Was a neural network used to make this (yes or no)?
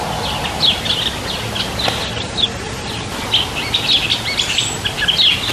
no